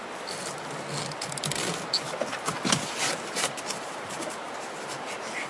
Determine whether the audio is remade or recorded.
recorded